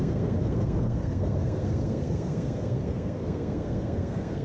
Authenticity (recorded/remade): remade